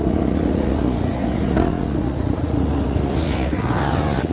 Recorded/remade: remade